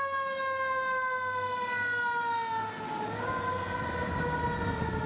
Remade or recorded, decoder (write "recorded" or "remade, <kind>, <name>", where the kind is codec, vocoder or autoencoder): recorded